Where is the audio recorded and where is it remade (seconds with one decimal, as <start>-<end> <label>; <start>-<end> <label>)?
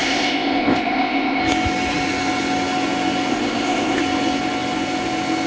0.0-1.4 remade; 1.4-3.3 recorded; 3.3-4.0 remade; 4.0-5.5 recorded